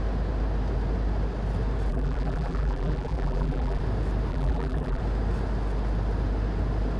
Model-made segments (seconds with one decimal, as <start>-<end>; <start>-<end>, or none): 1.9-3.8; 4.3-5.0